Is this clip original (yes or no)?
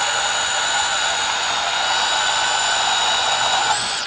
no